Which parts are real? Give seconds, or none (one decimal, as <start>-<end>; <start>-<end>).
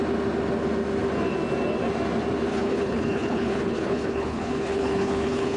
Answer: 0.0-2.5